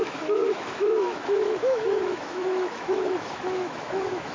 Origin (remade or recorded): remade